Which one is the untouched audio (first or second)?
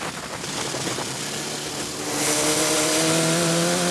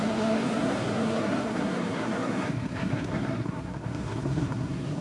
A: first